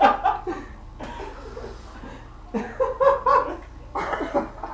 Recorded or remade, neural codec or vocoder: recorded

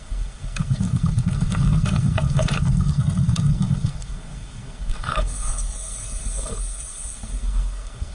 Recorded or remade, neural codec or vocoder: remade, codec, SNAC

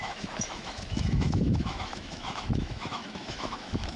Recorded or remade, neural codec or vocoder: remade, autoencoder, DAC-VAE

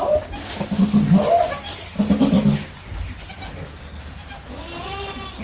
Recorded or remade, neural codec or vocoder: recorded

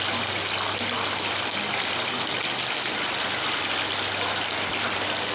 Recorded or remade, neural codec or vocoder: recorded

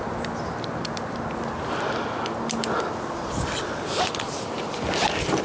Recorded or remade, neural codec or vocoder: recorded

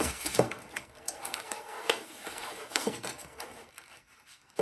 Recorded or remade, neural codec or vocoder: remade, codec, SNAC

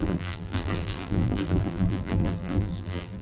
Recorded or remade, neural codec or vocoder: remade, vocoder, BigVGAN v2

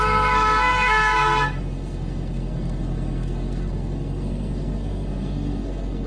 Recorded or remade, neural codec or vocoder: remade, codec, SNAC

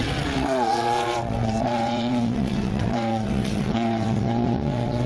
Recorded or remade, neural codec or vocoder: remade, vocoder, WaveNeXt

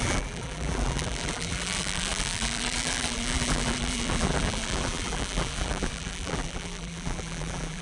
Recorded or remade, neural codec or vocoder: remade, vocoder, BigVGAN v2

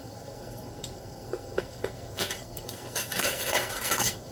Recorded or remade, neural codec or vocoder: remade, codec, SNAC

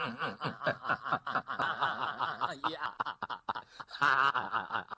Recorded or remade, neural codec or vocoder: recorded